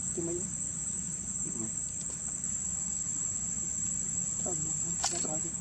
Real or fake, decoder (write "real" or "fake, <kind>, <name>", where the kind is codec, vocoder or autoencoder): real